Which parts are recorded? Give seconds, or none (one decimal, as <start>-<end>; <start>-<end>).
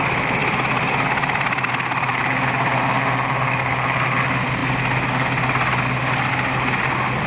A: 0.0-7.3